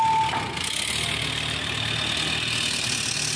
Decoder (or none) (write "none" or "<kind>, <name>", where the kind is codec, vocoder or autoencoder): none